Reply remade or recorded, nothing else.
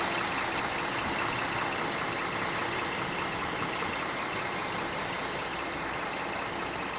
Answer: recorded